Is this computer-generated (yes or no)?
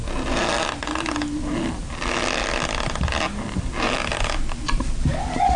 no